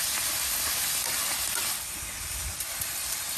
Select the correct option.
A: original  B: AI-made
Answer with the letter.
A